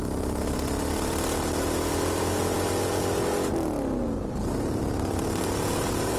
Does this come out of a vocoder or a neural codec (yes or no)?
no